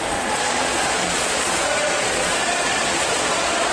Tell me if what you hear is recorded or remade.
remade